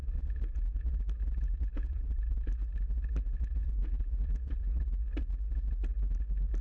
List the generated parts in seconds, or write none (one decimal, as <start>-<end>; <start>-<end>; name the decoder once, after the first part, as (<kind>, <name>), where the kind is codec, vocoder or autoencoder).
0.0-0.9 (vocoder, Vocos); 1.7-2.5; 3.6-4.6